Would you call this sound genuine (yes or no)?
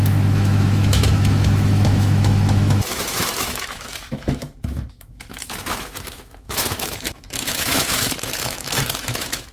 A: no